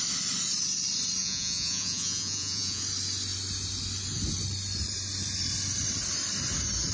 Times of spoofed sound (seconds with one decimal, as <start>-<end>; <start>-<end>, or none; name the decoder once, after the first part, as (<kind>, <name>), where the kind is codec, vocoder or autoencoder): 1.2-2.8 (vocoder, Vocos)